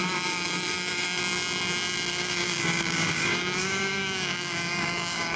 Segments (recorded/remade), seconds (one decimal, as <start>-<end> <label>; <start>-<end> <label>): 0.0-1.2 remade; 1.2-2.1 recorded; 2.1-5.4 remade